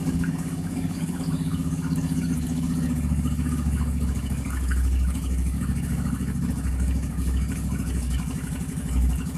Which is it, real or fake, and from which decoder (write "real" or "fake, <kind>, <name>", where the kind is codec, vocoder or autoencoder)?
fake, codec, DAC